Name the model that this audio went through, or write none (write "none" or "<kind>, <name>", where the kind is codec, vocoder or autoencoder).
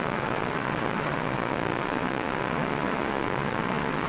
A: vocoder, Vocos